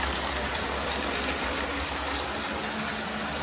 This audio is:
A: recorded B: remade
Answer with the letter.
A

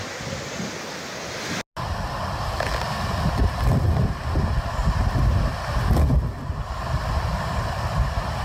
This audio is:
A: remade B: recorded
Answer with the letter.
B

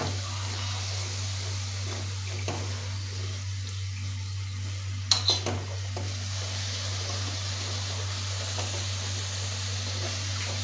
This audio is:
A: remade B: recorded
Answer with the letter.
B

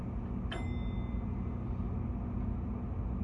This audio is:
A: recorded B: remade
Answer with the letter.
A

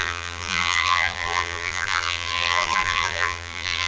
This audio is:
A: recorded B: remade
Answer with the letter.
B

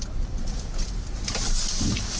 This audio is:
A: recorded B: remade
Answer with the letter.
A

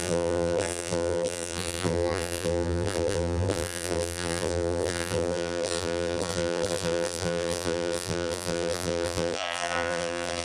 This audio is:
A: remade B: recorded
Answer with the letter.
A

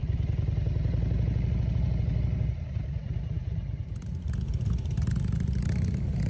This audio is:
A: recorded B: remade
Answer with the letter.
B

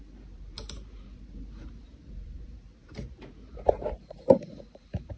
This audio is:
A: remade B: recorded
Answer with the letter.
A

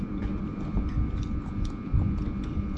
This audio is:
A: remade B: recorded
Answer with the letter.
A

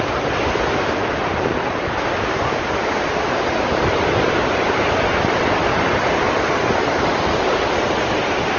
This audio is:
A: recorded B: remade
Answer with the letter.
A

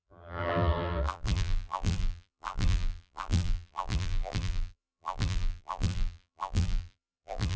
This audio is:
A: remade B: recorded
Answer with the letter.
A